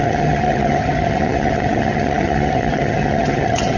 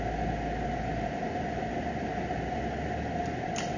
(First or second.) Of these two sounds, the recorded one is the second